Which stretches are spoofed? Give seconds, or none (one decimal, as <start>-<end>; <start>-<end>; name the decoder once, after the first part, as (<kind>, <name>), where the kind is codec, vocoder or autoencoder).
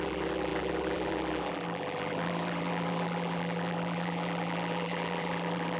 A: 0.0-5.8 (vocoder, BigVGAN v2)